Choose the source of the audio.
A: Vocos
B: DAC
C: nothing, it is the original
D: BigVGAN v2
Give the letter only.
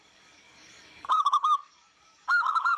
B